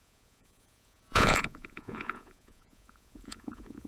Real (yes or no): no